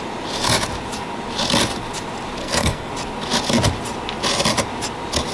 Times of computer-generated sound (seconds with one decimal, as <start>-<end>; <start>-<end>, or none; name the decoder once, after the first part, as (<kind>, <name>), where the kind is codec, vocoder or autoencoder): 2.4-2.9 (codec, SNAC)